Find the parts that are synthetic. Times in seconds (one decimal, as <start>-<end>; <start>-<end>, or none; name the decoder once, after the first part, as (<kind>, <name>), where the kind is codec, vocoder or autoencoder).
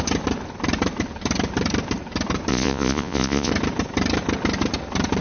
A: 2.5-3.5 (vocoder, Vocos)